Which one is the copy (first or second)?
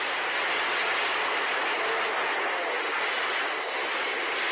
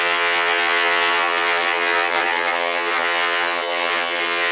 second